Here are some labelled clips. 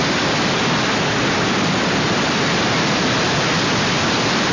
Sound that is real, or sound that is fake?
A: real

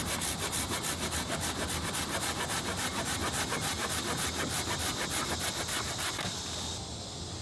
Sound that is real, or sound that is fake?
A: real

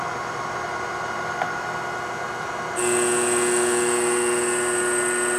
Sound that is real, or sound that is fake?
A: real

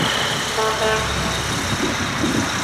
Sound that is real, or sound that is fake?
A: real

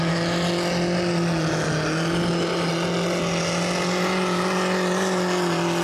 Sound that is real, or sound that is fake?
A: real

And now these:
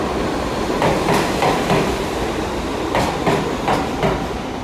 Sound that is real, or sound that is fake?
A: real